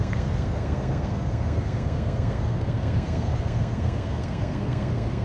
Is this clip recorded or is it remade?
remade